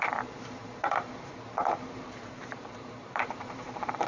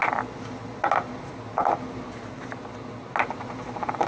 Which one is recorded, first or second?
second